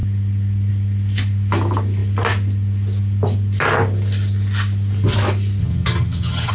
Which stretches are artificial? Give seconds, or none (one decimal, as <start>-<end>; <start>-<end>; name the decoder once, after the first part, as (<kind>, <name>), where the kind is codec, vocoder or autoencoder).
5.6-6.5 (vocoder, HiFi-GAN)